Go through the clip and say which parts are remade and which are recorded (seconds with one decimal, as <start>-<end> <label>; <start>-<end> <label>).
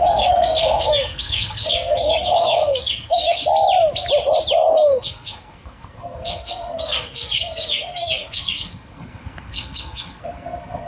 0.0-3.4 remade; 3.4-4.7 recorded; 4.7-10.9 remade